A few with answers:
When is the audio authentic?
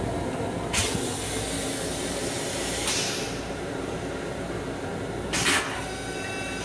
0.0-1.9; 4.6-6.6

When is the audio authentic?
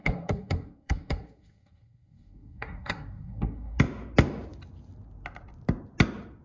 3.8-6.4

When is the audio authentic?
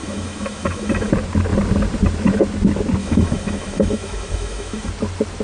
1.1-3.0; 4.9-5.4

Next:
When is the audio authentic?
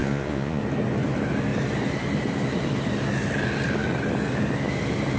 0.6-5.2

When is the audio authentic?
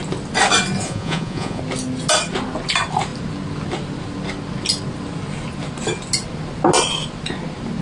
0.0-0.8; 1.6-7.8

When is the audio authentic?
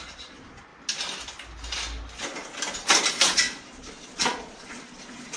0.7-3.1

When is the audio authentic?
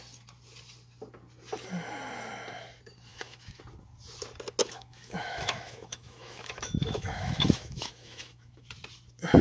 0.0-3.1; 3.6-4.6; 8.7-9.4